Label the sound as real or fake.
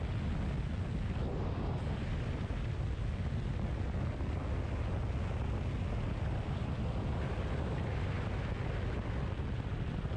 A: real